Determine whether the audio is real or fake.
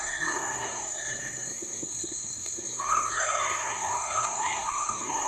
fake